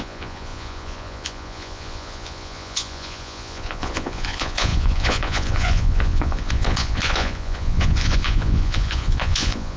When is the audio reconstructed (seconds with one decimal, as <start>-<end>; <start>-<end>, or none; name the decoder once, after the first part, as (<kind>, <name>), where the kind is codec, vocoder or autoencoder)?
0.0-9.8 (vocoder, Vocos)

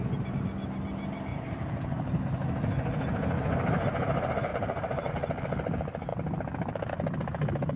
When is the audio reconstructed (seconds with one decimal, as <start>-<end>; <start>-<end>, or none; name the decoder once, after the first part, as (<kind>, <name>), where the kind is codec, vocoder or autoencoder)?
1.3-2.2 (vocoder, BigVGAN v2); 4.5-5.1

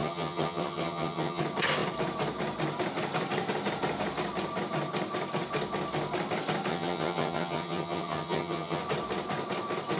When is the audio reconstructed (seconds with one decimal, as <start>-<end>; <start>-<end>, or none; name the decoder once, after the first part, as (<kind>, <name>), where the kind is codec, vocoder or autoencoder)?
0.0-1.4 (vocoder, HiFi-GAN); 6.7-8.8

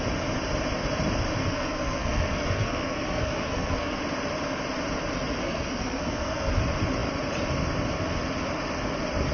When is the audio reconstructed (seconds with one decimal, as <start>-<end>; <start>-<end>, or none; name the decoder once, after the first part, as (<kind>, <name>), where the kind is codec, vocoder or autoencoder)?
1.4-4.0 (codec, SNAC); 5.4-6.5